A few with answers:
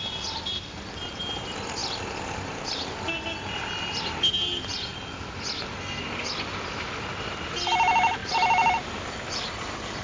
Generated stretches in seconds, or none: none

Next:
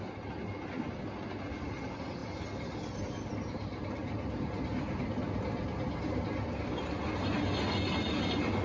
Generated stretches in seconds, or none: 3.7-5.4 (vocoder, BigVGAN v2)